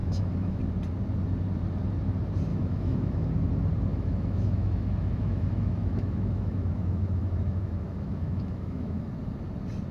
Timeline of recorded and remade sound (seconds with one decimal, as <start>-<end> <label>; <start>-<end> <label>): 0.0-0.6 remade; 0.6-2.5 recorded; 2.5-3.3 remade; 3.3-3.9 recorded; 3.9-9.1 remade; 9.1-9.9 recorded